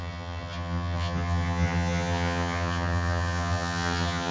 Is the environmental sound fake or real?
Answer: fake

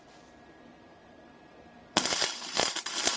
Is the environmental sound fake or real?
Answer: fake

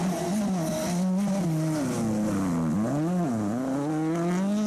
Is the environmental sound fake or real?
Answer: real